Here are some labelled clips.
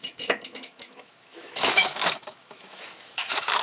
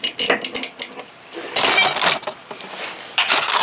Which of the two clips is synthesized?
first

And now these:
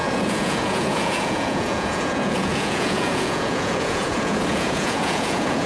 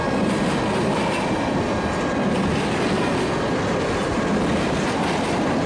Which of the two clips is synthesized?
first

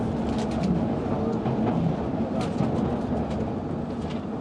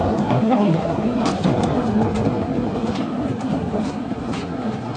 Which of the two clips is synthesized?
second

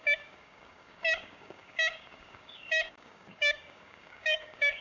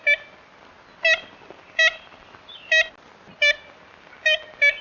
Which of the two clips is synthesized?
first